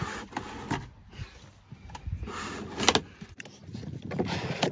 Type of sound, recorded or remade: recorded